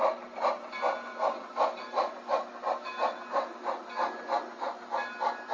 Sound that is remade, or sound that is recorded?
recorded